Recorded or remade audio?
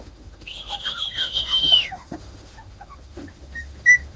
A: remade